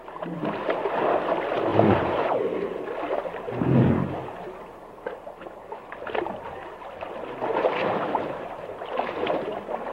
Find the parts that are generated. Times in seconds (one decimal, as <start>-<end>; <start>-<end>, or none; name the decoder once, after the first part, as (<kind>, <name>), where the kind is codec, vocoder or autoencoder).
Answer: 1.7-3.0 (vocoder, BigVGAN v2); 7.7-8.8